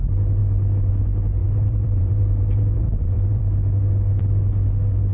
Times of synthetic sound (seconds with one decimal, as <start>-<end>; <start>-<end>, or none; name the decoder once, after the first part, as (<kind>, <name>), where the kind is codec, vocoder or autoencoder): 1.4-3.4 (vocoder, BigVGAN v2)